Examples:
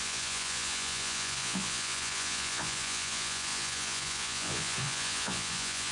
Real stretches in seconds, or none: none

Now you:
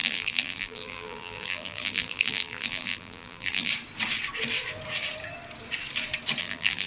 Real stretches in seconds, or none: 3.7-6.4

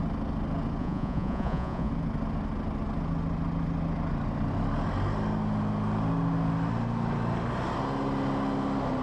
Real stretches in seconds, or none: 0.0-0.8; 1.9-9.0

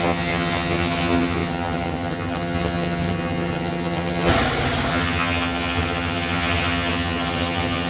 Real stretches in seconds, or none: 4.3-4.9

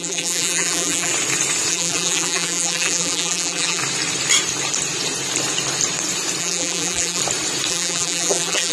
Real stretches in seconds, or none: 1.1-1.7; 3.8-6.4; 7.2-7.7

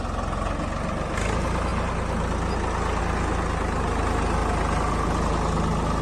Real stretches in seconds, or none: 0.0-6.0

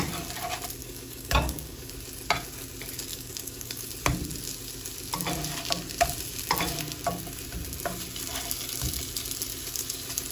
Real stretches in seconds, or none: 0.0-0.8; 1.9-3.1; 3.9-10.3

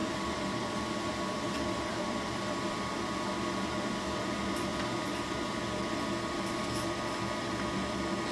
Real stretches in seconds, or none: 3.2-4.7; 5.6-8.3